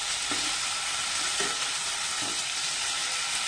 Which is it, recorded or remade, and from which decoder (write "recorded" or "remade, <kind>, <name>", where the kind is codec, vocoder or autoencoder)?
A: recorded